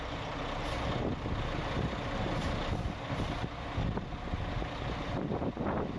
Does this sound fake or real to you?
real